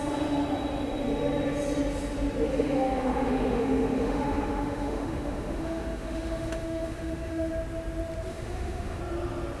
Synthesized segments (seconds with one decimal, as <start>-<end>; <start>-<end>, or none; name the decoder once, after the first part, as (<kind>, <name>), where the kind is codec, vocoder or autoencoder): 2.5-7.5 (autoencoder, DAC-VAE); 8.3-9.0